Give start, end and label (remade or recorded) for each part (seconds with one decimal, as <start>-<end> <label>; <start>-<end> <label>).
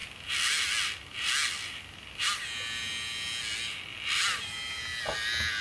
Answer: 0.0-5.6 recorded